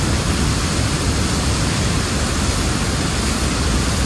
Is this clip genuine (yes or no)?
yes